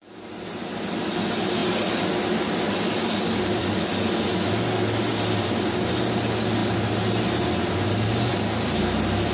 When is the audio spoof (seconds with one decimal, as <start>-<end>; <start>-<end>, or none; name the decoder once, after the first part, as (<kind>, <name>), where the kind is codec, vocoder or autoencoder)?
none